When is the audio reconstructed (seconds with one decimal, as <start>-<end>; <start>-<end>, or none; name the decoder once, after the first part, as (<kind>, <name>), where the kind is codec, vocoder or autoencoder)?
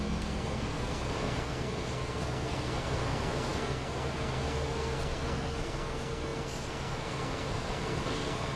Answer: 0.0-8.6 (codec, SNAC)